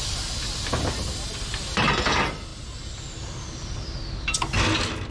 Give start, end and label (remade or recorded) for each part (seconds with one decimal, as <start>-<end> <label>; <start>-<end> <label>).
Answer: 0.0-5.1 recorded